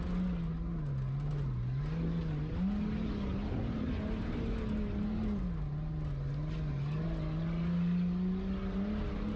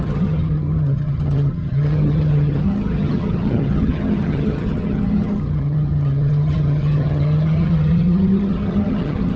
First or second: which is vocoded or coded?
second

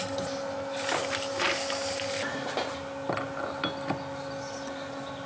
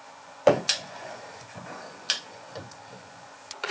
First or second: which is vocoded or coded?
second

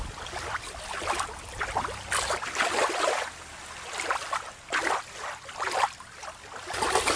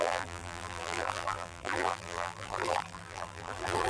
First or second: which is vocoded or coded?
second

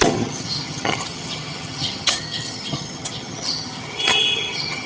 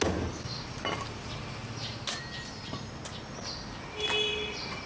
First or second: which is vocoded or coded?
first